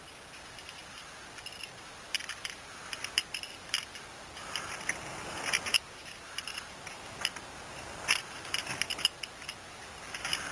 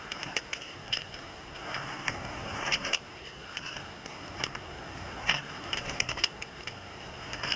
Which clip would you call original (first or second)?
first